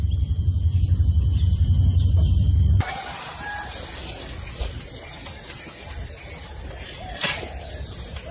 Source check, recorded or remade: recorded